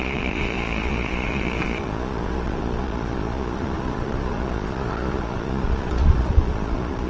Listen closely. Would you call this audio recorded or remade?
remade